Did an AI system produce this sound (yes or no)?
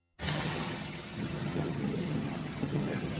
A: yes